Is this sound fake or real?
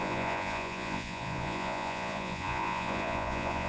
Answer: fake